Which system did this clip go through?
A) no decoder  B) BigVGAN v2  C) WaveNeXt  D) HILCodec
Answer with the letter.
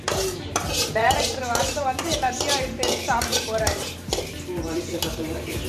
B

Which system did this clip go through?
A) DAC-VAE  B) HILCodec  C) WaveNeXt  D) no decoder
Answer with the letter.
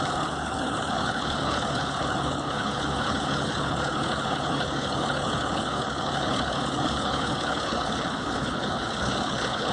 B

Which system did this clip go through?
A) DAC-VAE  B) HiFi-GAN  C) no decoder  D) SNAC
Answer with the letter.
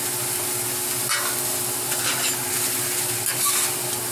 C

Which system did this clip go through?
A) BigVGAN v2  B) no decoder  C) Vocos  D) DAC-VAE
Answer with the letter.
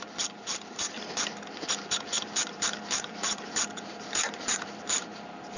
A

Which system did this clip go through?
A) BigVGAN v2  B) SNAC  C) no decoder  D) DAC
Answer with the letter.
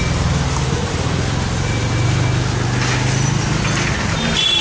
C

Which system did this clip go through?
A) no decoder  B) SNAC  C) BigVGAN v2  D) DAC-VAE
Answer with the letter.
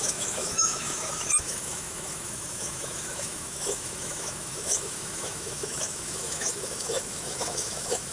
D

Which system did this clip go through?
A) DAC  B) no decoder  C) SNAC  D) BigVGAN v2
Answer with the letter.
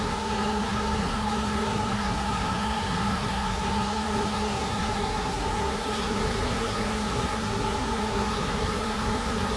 C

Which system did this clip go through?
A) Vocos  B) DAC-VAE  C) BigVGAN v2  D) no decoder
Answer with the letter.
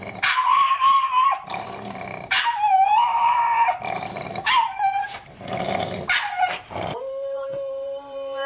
C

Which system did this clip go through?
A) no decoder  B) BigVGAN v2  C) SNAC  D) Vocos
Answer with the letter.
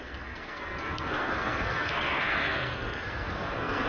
C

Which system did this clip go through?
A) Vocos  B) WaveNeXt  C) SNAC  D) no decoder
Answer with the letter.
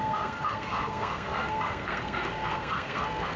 C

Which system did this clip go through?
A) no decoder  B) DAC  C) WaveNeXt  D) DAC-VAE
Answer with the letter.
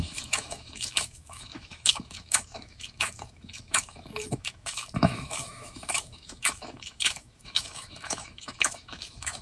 D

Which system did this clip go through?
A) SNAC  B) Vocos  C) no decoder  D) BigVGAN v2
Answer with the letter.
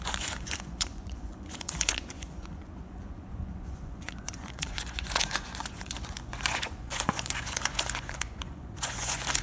B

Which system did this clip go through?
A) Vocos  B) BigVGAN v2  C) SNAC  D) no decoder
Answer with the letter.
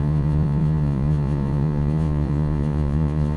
A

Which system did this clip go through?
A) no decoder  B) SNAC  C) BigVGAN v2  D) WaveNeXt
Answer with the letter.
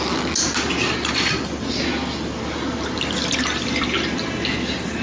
A